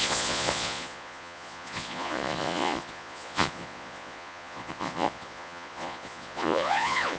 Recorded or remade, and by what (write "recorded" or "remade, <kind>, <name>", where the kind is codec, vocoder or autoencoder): remade, vocoder, Vocos